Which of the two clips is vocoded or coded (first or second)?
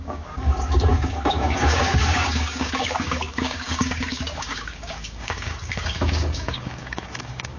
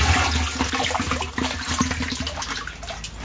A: first